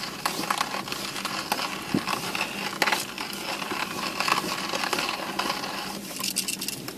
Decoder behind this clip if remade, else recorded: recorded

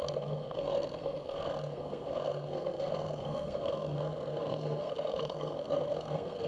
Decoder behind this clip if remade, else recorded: remade, codec, SNAC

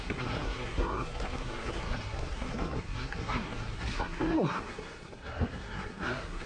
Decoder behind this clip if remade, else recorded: remade, codec, SNAC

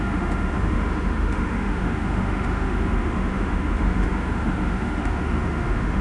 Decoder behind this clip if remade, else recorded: remade, autoencoder, DAC-VAE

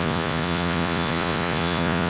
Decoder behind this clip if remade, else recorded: remade, vocoder, Vocos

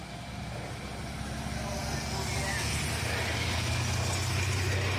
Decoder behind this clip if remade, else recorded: recorded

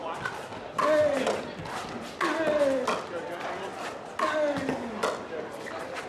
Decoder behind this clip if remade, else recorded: recorded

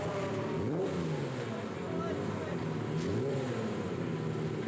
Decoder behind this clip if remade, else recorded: recorded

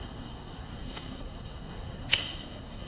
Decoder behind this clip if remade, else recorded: remade, codec, SNAC